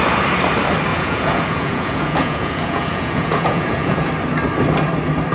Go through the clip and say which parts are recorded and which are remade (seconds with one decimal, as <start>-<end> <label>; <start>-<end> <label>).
0.0-0.9 recorded; 0.9-4.1 remade; 4.1-5.3 recorded